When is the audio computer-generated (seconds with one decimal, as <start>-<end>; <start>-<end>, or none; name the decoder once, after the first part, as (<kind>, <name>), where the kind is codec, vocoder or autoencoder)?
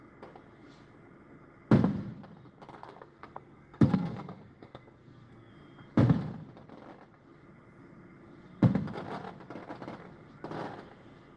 2.8-5.5 (codec, SNAC)